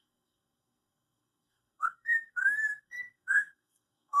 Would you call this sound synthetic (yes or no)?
yes